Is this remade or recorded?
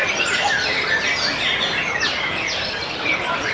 remade